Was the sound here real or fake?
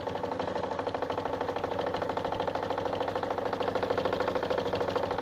real